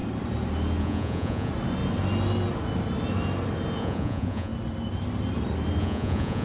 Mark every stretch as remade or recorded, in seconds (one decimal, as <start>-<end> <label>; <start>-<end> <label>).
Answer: 0.0-0.8 recorded; 0.8-1.5 remade; 1.5-3.8 recorded; 3.8-4.5 remade; 4.5-5.8 recorded; 5.8-6.4 remade